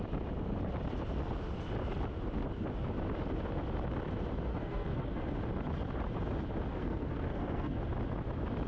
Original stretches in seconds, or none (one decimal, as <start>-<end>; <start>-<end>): 0.0-4.5; 5.2-6.7; 7.8-8.7